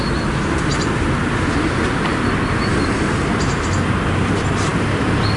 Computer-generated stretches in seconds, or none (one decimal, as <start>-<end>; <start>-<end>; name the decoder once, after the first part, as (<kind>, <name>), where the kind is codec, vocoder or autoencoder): none